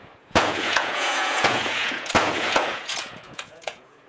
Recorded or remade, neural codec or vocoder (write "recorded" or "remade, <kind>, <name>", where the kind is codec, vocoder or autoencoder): remade, vocoder, Vocos